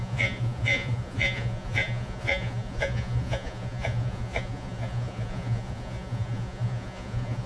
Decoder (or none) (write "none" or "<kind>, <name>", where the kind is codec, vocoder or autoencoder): vocoder, Vocos